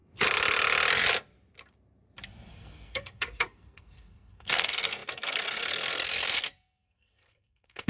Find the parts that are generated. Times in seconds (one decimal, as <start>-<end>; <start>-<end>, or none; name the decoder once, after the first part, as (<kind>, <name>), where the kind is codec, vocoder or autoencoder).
2.5-7.9 (codec, SNAC)